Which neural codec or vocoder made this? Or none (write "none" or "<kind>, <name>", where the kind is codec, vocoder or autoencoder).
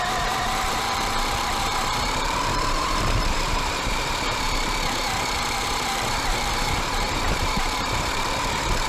vocoder, BigVGAN v2